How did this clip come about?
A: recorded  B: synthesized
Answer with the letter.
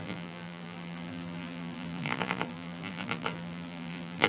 B